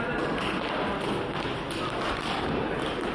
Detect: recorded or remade recorded